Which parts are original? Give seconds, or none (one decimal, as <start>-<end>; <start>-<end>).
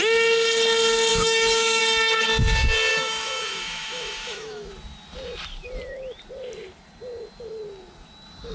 0.0-1.1; 1.8-2.9; 4.7-8.5